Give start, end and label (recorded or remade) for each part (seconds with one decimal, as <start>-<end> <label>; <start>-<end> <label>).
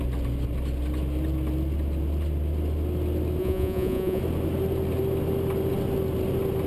0.0-3.4 recorded; 3.4-4.2 remade; 4.2-6.7 recorded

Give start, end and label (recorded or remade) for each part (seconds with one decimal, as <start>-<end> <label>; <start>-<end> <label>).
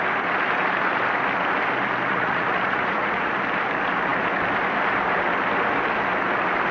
0.0-2.1 recorded; 2.1-3.3 remade; 3.3-6.7 recorded